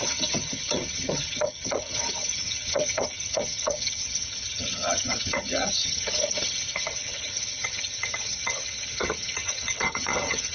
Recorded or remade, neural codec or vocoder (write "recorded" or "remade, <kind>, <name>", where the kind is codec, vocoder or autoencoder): remade, vocoder, HiFi-GAN